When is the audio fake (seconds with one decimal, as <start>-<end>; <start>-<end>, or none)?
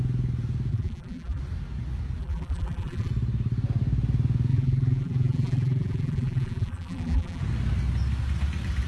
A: 0.7-1.4; 2.2-3.1; 4.5-7.4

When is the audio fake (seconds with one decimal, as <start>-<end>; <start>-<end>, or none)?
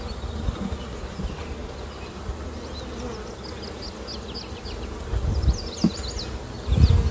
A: none